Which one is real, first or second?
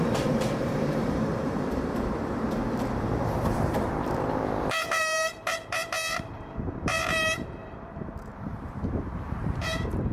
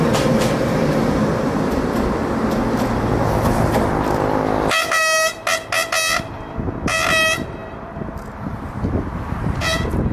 second